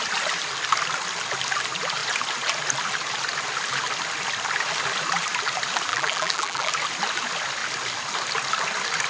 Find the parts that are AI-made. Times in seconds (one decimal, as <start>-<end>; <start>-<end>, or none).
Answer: 5.9-6.7